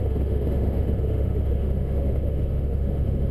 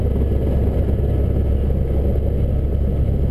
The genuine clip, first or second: second